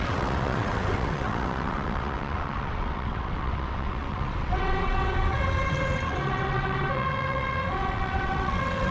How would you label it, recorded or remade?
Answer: remade